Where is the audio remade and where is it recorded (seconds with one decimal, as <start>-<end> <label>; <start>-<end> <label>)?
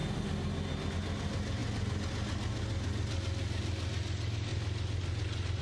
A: 0.0-5.6 recorded